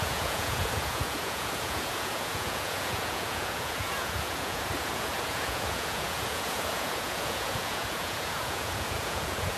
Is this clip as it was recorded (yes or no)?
no